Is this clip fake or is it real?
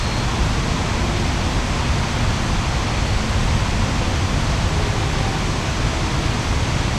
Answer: real